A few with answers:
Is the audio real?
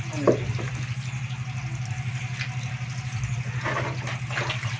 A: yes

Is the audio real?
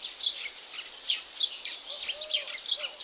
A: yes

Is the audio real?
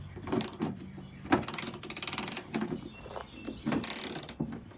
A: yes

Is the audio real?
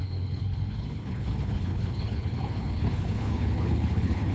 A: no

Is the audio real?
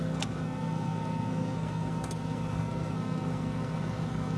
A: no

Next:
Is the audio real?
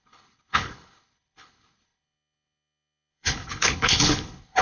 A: no